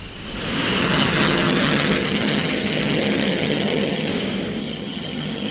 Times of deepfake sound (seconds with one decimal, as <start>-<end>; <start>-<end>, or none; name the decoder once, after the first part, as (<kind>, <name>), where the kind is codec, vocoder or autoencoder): 0.8-4.1 (vocoder, HiFi-GAN); 4.6-5.5